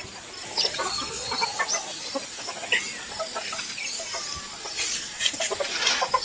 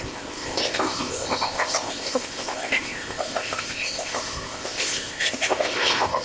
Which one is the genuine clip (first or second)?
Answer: first